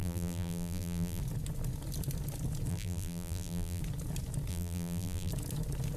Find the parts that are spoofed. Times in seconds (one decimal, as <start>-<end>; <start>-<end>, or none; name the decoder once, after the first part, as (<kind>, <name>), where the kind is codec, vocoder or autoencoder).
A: 0.0-1.2 (vocoder, BigVGAN v2); 2.7-3.8; 4.5-5.3